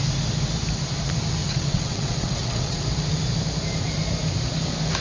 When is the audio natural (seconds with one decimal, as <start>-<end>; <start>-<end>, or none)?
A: 0.0-1.4; 2.8-5.0